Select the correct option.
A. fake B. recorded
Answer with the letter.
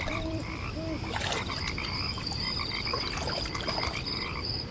A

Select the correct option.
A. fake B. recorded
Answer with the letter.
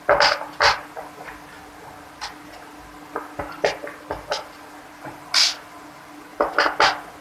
B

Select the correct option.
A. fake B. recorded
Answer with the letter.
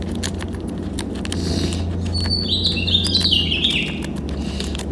B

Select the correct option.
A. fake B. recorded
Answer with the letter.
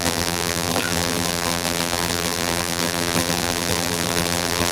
A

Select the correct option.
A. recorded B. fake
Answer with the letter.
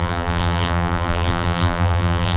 B